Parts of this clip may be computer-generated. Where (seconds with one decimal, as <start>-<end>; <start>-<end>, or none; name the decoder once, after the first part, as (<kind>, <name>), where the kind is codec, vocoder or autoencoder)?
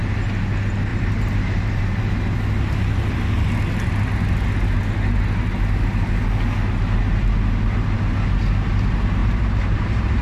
0.9-2.1 (vocoder, BigVGAN v2); 9.2-10.2